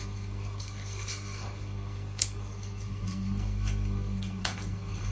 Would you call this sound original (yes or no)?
no